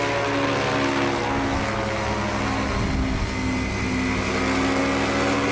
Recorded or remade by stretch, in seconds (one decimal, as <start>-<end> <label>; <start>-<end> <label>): 0.0-5.5 recorded

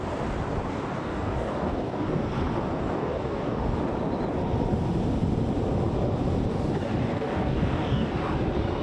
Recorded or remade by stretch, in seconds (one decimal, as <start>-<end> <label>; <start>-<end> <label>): 0.0-0.7 recorded; 0.7-2.2 remade; 2.2-2.8 recorded; 2.8-3.8 remade; 3.8-6.5 recorded; 6.5-8.1 remade; 8.1-8.8 recorded

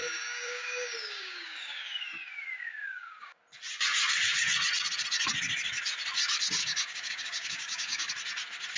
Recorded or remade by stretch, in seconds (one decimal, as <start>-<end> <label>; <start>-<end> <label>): 0.0-3.4 remade; 3.4-6.6 recorded; 6.6-8.1 remade; 8.1-8.8 recorded

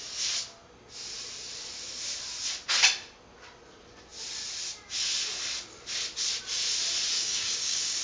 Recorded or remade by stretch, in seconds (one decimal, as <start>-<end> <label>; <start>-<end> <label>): 0.0-7.1 recorded; 7.1-8.0 remade

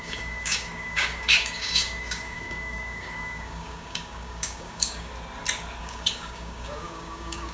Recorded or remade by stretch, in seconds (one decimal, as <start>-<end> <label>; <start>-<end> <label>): 0.0-5.1 remade; 5.1-5.8 recorded; 5.8-7.5 remade

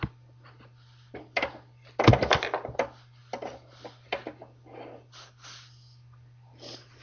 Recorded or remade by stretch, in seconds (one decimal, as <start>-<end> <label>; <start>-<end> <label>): 0.0-7.0 recorded